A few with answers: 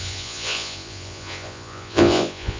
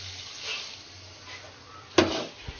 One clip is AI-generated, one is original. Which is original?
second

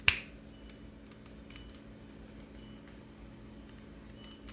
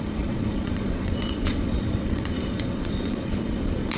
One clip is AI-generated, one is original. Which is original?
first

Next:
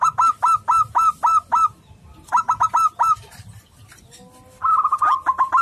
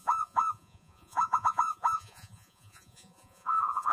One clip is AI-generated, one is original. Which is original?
first